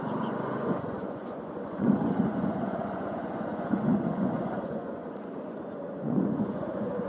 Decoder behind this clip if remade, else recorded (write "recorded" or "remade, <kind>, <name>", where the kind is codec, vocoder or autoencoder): remade, vocoder, Vocos